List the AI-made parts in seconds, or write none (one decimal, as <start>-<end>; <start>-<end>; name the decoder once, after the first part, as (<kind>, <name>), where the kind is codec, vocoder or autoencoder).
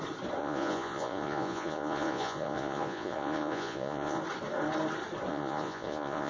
0.4-4.2 (vocoder, Vocos); 5.3-6.3